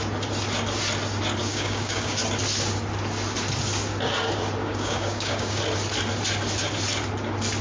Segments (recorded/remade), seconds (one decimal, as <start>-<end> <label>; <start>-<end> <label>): 0.0-1.4 recorded; 1.4-2.2 remade; 2.2-4.6 recorded; 4.6-5.6 remade; 5.6-7.6 recorded